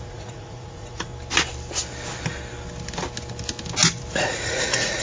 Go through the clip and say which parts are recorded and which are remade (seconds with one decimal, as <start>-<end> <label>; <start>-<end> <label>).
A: 0.0-1.1 remade; 1.1-4.1 recorded; 4.1-5.0 remade